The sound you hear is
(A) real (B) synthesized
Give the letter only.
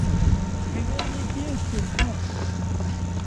A